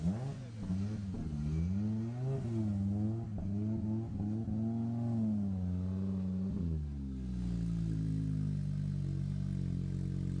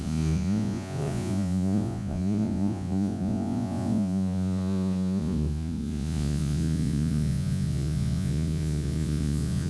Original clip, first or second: first